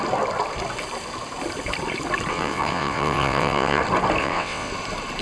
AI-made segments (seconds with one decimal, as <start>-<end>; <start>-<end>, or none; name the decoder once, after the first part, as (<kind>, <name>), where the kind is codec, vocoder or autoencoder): 2.3-3.8 (vocoder, WaveNeXt); 4.2-4.7

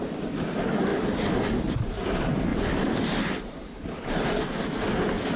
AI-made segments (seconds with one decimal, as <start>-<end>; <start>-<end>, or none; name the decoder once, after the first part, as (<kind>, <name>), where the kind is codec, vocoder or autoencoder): none